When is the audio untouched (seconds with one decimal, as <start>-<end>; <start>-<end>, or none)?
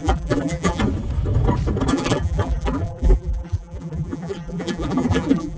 0.8-1.9